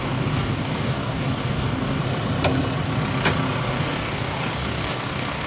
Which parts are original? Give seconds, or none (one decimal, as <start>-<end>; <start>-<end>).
2.0-3.6